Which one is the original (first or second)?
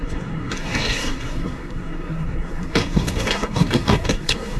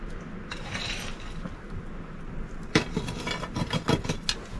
second